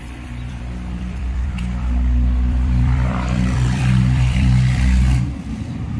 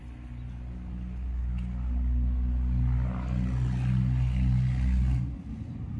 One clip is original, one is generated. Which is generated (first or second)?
first